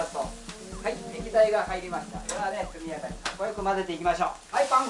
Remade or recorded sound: recorded